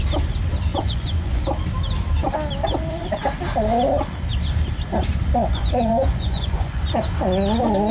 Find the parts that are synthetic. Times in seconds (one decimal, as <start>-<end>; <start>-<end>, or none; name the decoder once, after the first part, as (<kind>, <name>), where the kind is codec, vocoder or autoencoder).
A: 0.7-1.4 (vocoder, Vocos); 5.4-6.8